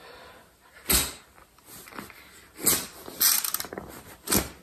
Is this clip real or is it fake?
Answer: real